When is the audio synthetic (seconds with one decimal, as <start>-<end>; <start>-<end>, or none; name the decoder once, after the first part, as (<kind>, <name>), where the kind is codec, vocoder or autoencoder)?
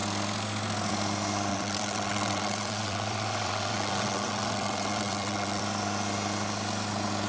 1.5-5.6 (vocoder, WaveNeXt)